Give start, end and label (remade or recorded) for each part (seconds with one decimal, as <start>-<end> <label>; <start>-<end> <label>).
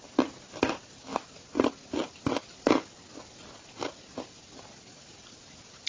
0.0-5.9 recorded